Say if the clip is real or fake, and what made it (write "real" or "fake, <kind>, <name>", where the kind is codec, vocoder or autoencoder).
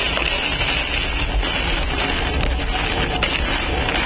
real